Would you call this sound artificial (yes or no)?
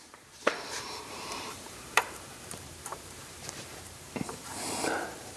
yes